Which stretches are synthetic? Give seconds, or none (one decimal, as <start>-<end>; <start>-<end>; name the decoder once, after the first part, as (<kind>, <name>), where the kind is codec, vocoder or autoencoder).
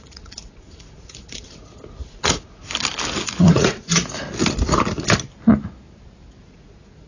0.0-2.6 (vocoder, Vocos); 3.4-4.0; 6.4-7.1